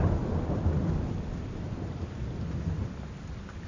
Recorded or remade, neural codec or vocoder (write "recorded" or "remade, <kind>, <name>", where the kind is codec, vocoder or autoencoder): recorded